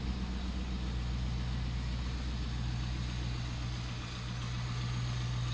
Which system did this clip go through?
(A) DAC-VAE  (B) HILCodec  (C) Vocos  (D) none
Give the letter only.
D